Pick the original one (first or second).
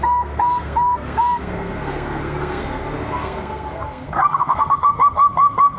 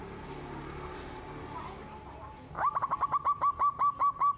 second